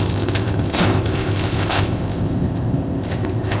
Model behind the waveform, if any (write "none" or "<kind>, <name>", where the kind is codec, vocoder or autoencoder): codec, ZipCodec